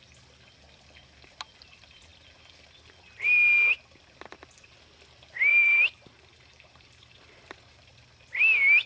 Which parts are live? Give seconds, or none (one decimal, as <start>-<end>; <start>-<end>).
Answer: 0.0-5.5; 7.9-8.9